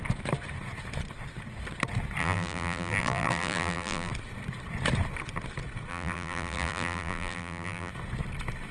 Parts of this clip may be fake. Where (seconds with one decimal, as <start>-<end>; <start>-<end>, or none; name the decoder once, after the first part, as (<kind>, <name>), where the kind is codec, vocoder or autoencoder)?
2.2-4.1 (vocoder, BigVGAN v2); 5.9-7.9